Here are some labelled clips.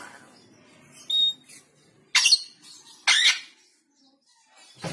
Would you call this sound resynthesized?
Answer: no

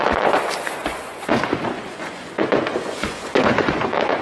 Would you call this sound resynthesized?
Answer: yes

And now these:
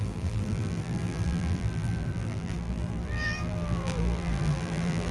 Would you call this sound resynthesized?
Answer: yes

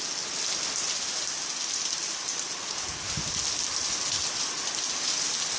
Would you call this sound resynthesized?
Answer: no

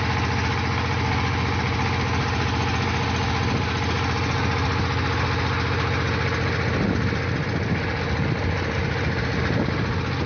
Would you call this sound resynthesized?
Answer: no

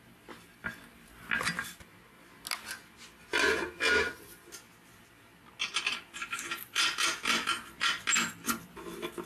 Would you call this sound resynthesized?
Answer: no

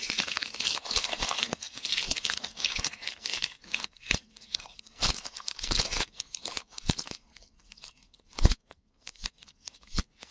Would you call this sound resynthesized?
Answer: yes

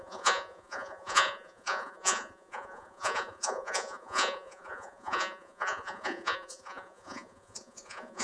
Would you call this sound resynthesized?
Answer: yes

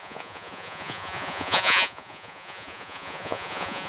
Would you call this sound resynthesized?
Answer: yes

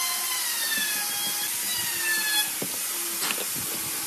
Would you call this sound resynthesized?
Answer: no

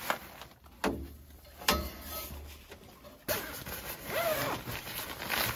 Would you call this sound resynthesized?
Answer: no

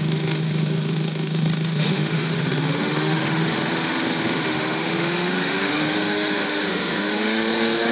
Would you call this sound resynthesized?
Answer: yes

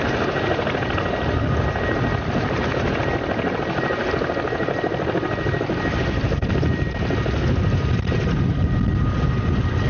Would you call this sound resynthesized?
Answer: no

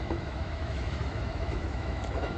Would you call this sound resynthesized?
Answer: yes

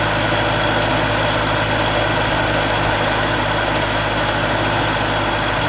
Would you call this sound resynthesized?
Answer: no